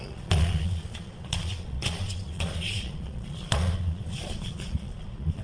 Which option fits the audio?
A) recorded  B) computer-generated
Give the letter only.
B